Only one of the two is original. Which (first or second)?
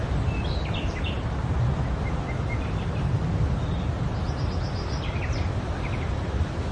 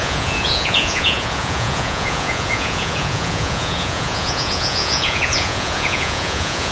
first